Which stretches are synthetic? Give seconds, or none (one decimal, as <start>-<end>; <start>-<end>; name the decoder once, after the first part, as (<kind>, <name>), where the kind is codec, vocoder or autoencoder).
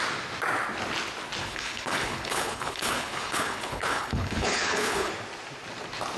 1.4-5.1 (codec, HILCodec)